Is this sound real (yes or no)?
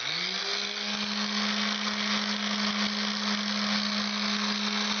yes